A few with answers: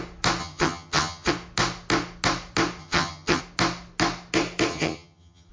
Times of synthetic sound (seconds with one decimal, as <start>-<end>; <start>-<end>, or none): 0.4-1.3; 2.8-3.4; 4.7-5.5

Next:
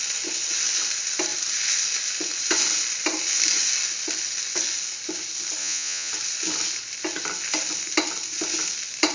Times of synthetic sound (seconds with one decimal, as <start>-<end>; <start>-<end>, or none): 5.6-6.1

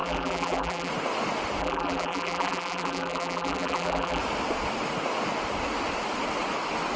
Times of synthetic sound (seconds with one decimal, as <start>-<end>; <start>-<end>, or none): 0.0-0.9; 1.6-4.2

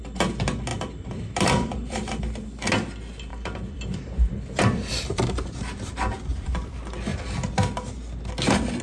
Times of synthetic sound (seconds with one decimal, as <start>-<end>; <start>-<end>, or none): 0.7-2.2; 3.3-5.9